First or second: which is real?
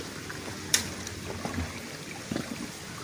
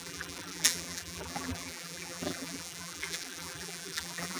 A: first